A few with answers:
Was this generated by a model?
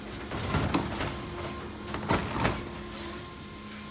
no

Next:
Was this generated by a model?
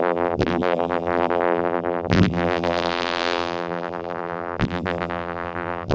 yes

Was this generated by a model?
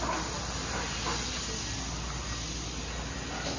no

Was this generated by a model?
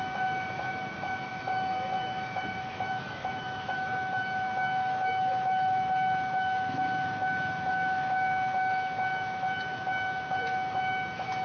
yes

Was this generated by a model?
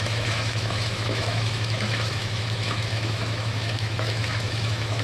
yes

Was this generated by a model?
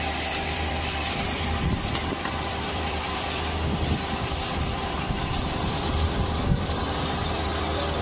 yes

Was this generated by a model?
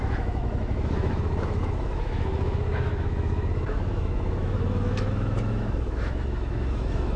yes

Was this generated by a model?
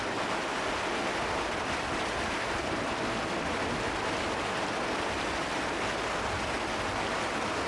no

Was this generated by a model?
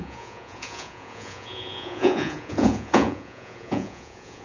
yes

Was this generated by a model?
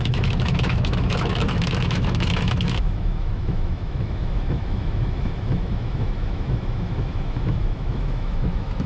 yes